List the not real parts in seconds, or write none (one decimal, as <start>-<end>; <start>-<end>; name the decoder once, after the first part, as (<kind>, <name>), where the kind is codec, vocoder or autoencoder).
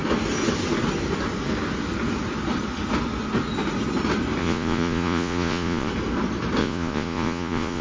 4.4-5.9 (vocoder, Vocos); 6.6-7.8